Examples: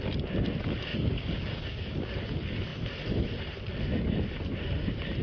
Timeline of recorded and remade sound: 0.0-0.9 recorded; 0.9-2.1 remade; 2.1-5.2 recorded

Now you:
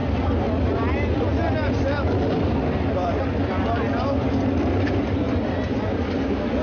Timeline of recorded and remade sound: 0.0-6.6 recorded